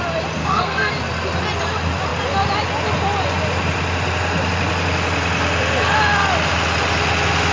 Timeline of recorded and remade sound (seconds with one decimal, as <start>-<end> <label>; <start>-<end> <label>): 0.0-0.4 recorded; 0.4-0.9 remade; 0.9-7.5 recorded

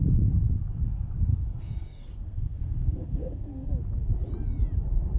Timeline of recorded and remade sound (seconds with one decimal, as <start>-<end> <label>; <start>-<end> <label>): 0.0-1.3 recorded; 1.3-3.7 remade; 3.7-5.2 recorded

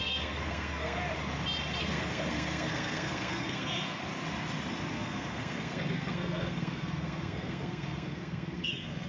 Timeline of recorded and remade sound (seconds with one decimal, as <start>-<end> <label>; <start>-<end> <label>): 0.0-1.0 remade; 1.0-1.8 recorded; 1.8-4.0 remade; 4.0-4.9 recorded; 4.9-9.1 remade

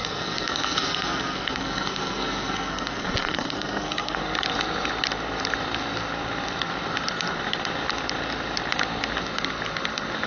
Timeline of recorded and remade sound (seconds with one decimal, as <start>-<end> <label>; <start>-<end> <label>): 0.0-4.2 remade; 4.2-10.3 recorded

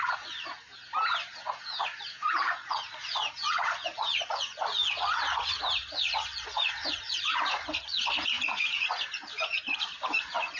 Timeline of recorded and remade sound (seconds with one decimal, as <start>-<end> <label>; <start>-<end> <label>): 0.0-0.7 remade; 0.7-1.6 recorded; 1.6-10.6 remade

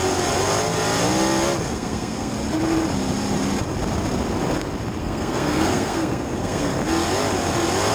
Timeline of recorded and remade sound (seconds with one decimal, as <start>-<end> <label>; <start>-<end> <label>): 0.0-1.7 recorded; 1.7-2.3 remade; 2.3-5.0 recorded; 5.0-6.7 remade; 6.7-7.9 recorded